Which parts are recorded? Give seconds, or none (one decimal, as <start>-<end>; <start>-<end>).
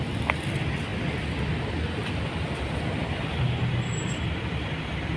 0.0-5.2